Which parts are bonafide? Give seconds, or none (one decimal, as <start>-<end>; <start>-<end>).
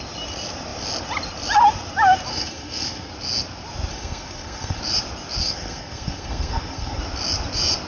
0.0-2.3; 3.1-3.9; 4.8-5.4; 7.0-7.9